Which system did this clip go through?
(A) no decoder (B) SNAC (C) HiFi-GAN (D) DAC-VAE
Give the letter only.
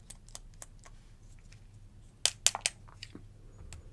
A